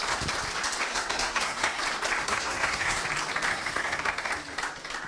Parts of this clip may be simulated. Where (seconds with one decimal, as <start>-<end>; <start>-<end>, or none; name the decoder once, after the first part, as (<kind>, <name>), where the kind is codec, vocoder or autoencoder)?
0.9-1.8 (codec, SNAC); 2.2-3.0; 3.5-4.3